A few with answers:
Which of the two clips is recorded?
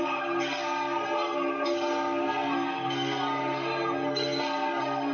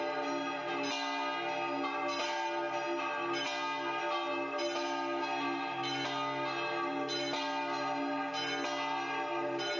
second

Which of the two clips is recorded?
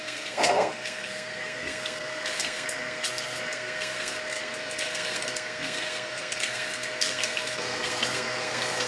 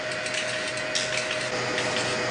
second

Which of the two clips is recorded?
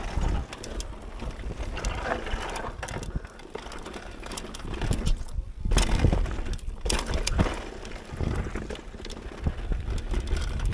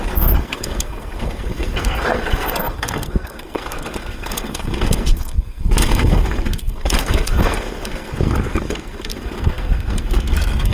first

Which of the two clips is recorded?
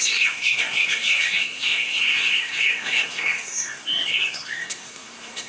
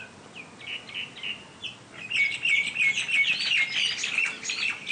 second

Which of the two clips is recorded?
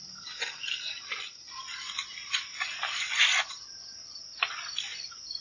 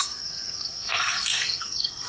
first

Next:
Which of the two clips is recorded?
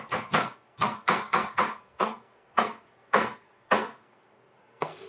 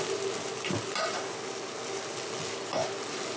second